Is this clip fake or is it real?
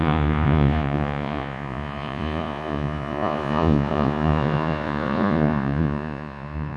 fake